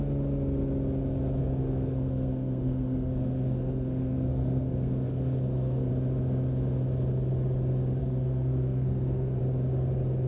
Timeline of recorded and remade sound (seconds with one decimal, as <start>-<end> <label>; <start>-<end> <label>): 0.0-1.4 recorded; 1.4-5.9 remade; 5.9-8.0 recorded; 8.0-9.4 remade; 9.4-10.3 recorded